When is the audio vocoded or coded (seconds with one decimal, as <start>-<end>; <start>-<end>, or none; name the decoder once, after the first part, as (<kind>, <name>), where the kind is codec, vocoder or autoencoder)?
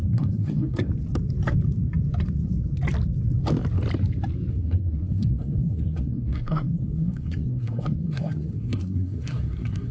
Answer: 0.0-0.9 (codec, SNAC); 4.5-9.9